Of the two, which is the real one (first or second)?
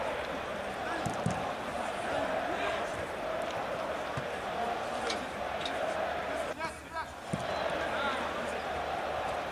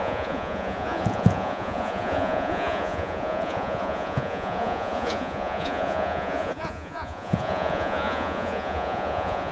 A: first